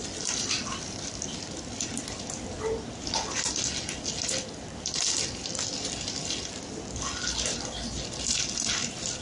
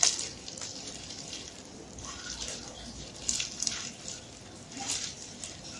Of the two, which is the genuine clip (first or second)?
first